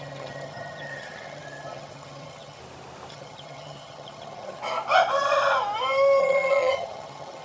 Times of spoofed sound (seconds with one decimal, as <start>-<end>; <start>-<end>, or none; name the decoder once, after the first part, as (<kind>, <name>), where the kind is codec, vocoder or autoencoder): 0.0-2.6 (vocoder, HiFi-GAN); 3.1-4.6; 6.2-7.4